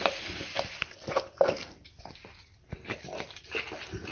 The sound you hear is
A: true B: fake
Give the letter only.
A